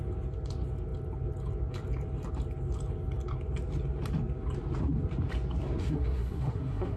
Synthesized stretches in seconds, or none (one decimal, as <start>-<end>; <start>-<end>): 5.8-7.0